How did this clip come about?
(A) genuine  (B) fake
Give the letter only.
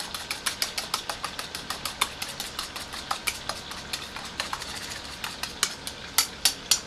A